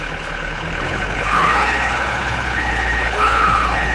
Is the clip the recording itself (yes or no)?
no